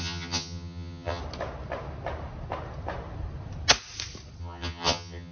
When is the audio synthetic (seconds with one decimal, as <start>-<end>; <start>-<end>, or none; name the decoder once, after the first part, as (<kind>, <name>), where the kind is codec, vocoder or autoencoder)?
0.0-1.2 (vocoder, HiFi-GAN); 4.4-5.3